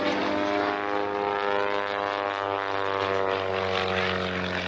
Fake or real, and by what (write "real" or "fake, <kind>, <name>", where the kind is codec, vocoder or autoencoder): real